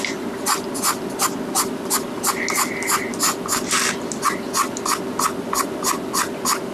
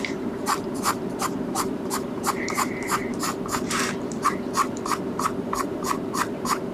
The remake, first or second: second